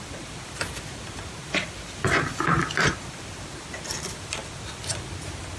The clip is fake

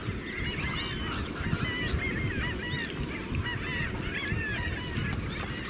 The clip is real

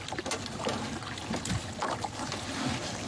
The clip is real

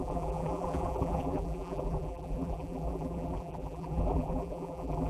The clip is fake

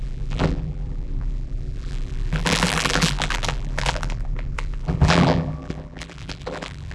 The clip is fake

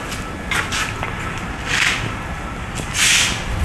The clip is real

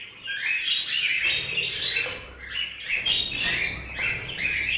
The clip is real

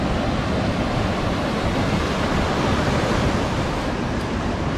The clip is real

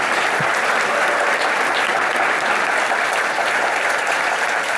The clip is fake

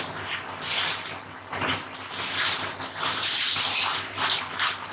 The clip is real